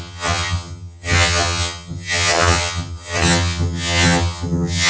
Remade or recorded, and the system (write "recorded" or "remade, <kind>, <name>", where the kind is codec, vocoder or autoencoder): remade, vocoder, HiFi-GAN